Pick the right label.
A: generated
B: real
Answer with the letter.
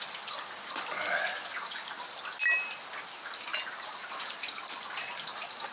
B